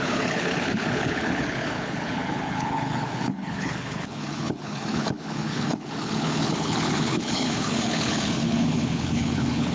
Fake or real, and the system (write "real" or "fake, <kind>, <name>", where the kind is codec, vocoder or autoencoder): fake, codec, HILCodec